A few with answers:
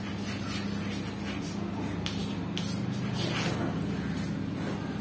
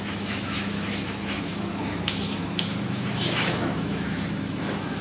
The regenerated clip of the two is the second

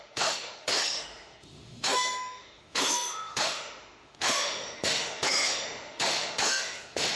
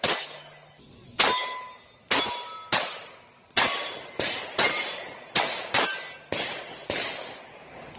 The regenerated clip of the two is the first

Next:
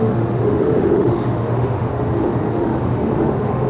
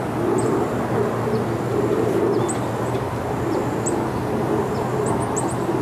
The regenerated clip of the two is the first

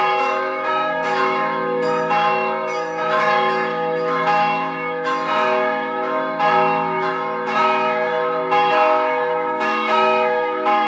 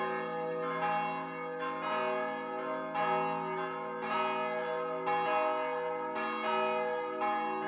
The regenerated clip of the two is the first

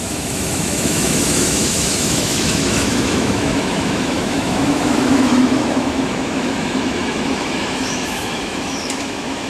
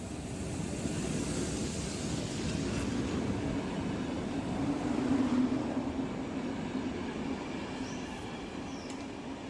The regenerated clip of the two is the first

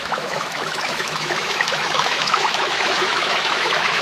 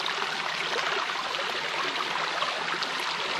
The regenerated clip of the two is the first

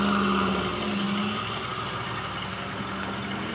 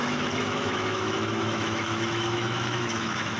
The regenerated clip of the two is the second